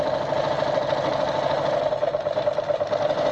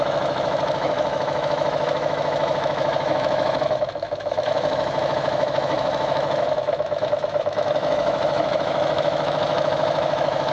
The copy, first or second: second